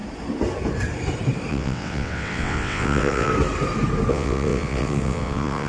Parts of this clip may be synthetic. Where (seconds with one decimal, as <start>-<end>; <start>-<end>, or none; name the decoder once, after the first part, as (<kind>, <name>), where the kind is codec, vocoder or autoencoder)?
1.5-3.3 (vocoder, WaveNeXt); 4.1-5.7